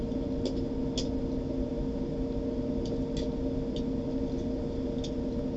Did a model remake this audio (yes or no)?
no